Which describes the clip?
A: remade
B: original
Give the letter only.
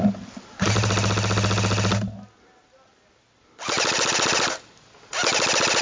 B